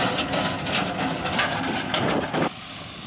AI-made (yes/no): no